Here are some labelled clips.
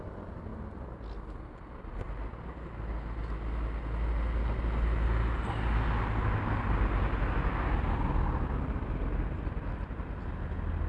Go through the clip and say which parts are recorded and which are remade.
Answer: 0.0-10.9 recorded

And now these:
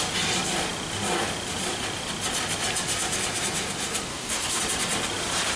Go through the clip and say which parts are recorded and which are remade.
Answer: 0.0-4.1 recorded; 4.1-4.6 remade; 4.6-5.6 recorded

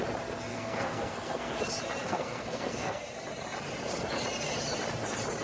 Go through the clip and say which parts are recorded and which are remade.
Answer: 0.0-0.5 recorded; 0.5-1.6 remade; 1.6-2.0 recorded; 2.0-3.0 remade; 3.0-5.4 recorded

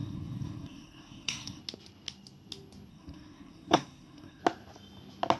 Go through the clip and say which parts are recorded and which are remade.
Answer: 0.0-1.6 remade; 1.6-2.9 recorded; 2.9-4.4 remade; 4.4-5.4 recorded